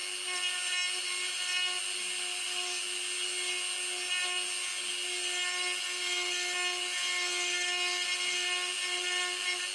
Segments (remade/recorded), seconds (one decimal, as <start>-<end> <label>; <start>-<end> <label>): 0.0-9.7 recorded